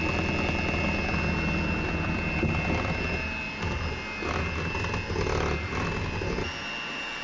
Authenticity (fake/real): real